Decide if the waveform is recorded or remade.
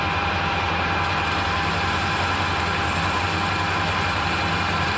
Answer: remade